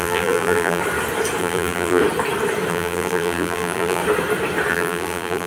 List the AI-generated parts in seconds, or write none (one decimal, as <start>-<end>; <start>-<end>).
0.0-0.8; 1.4-2.0; 2.7-4.0; 4.7-5.5